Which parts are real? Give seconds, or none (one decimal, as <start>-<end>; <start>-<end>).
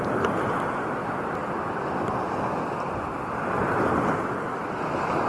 0.0-5.3